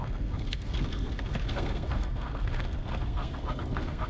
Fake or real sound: fake